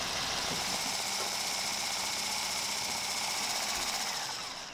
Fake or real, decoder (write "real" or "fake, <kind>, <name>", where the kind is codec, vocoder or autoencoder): fake, vocoder, BigVGAN v2